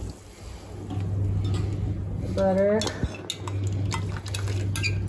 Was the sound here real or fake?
real